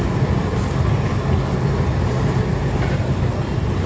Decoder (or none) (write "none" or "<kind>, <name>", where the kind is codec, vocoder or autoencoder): none